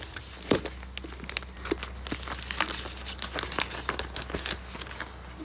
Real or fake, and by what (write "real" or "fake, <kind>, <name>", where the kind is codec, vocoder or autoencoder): real